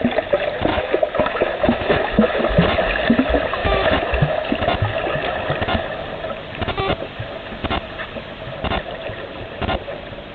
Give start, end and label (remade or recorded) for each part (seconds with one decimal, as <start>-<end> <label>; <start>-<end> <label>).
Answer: 0.0-0.7 recorded; 0.7-2.4 remade; 2.4-3.6 recorded; 3.6-4.5 remade; 4.5-10.3 recorded